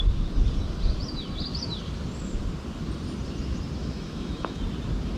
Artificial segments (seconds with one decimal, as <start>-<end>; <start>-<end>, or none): 3.8-4.6